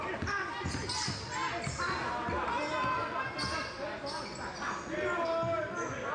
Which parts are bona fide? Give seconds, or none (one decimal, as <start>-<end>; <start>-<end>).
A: 0.0-6.1